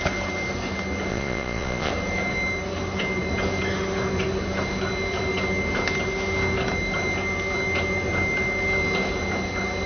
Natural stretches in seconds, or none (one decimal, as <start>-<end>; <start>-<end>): 0.0-1.1; 1.9-9.9